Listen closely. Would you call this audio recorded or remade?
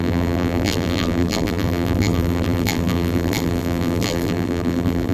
remade